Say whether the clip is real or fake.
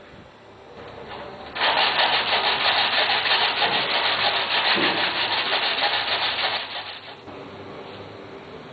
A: real